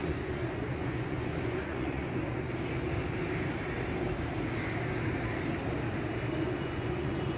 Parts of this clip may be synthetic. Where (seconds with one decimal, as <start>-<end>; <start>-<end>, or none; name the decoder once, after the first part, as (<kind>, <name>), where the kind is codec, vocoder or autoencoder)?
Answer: 0.0-2.2 (vocoder, Vocos); 6.4-7.4